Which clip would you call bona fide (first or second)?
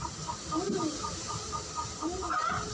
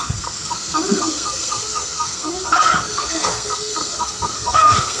first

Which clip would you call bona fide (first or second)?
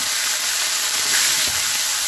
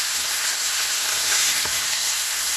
first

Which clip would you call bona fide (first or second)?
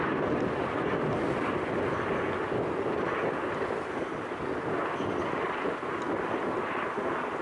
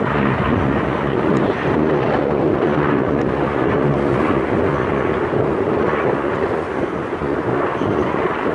first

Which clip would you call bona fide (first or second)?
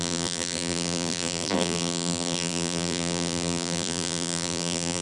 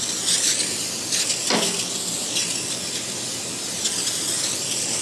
second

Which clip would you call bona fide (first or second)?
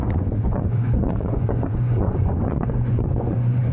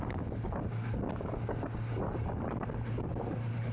second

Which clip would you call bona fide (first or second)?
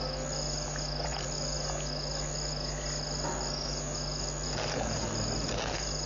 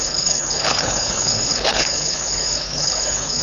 first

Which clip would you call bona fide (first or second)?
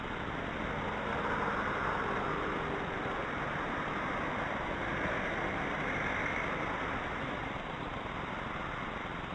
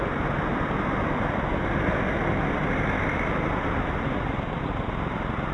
second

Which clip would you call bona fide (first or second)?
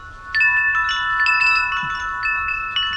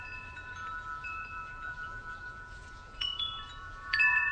first